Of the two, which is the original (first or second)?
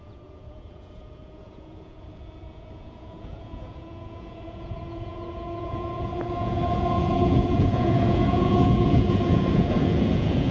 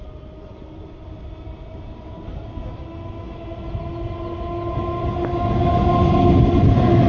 second